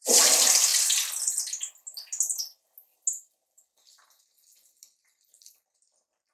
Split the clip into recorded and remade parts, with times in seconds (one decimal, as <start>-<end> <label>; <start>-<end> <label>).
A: 0.0-0.7 recorded; 0.7-1.7 remade; 1.7-6.3 recorded